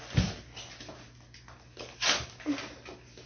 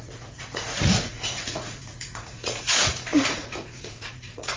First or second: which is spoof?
second